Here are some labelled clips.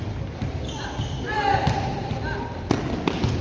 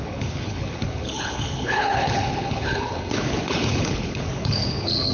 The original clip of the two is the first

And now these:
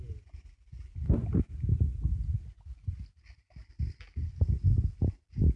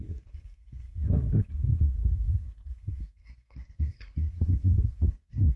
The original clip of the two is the first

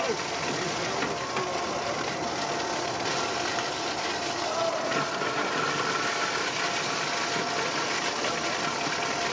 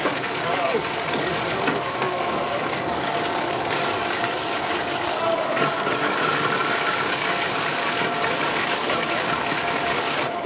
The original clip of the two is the first